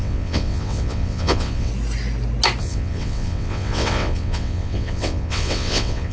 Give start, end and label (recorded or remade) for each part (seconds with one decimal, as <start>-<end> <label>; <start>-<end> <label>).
0.0-1.7 remade; 1.7-2.6 recorded; 2.6-6.1 remade

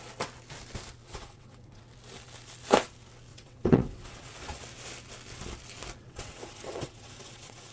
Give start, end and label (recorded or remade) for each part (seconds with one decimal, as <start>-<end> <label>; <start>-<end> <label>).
0.0-1.0 recorded; 1.0-1.8 remade; 1.8-3.3 recorded; 3.3-4.6 remade; 4.6-6.0 recorded; 6.0-7.7 remade

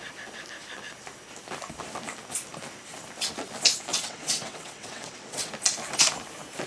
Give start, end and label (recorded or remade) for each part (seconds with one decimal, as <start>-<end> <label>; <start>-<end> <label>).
0.0-3.9 recorded; 3.9-5.5 remade; 5.5-6.7 recorded

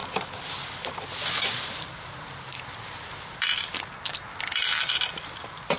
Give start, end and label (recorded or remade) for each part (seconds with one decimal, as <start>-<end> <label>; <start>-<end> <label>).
0.0-5.8 recorded

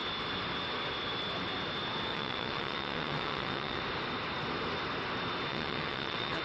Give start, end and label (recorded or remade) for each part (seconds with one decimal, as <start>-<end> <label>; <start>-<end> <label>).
0.0-2.1 recorded; 2.1-3.8 remade; 3.8-5.5 recorded; 5.5-6.4 remade

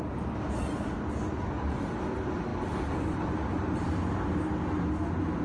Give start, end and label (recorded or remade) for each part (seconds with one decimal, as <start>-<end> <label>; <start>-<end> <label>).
0.0-5.4 recorded